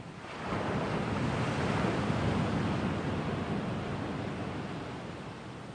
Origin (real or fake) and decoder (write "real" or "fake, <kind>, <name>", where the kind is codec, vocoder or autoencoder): real